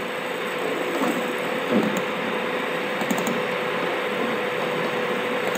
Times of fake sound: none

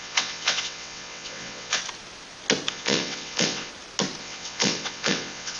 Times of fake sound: 0.0-1.8 (vocoder, WaveNeXt); 2.7-3.7; 4.2-5.6

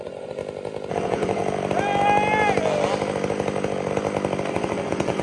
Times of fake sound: 0.0-0.4 (vocoder, Vocos); 0.9-1.4; 4.5-5.2

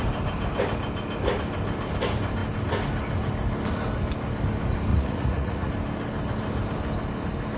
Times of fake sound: 4.9-5.7 (vocoder, Vocos)

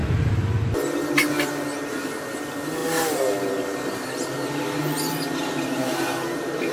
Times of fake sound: 0.0-0.8 (vocoder, BigVGAN v2)

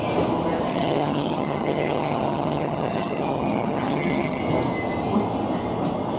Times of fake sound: 0.7-4.4 (vocoder, HiFi-GAN)